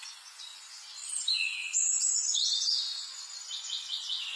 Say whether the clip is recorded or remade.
remade